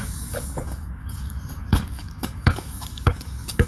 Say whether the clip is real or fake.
fake